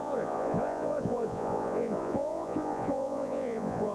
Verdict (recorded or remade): remade